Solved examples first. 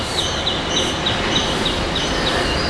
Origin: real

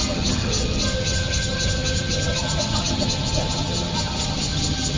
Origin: fake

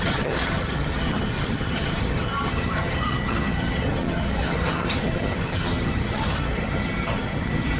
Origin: fake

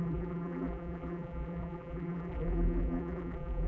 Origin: fake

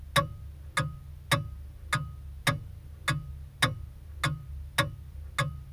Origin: real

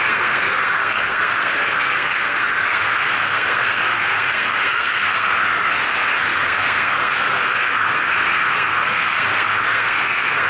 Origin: fake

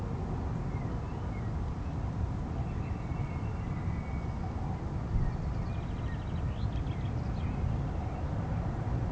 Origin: real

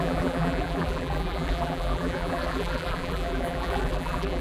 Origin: fake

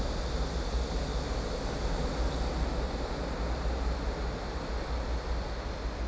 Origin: real